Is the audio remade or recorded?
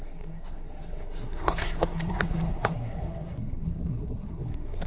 remade